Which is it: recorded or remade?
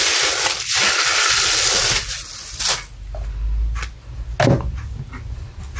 recorded